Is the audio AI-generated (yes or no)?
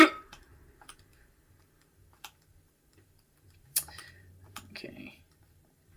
yes